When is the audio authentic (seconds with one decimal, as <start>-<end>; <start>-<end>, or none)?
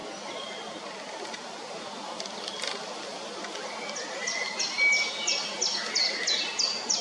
0.0-7.0